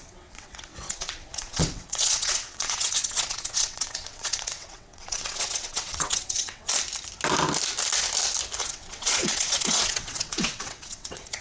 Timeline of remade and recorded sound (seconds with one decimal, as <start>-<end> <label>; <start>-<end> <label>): 0.0-6.7 remade; 6.7-8.6 recorded; 8.6-11.4 remade